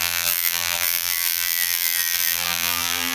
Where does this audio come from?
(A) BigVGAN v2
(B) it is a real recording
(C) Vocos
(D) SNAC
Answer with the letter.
A